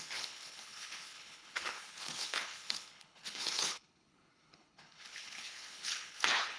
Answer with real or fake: fake